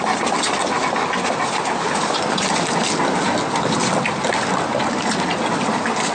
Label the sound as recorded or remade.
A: recorded